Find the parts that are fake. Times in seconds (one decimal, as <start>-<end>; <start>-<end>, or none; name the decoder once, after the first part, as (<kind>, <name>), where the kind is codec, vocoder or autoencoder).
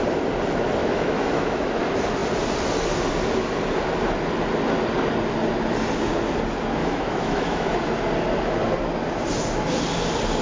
0.8-1.8 (autoencoder, DAC-VAE); 6.8-7.7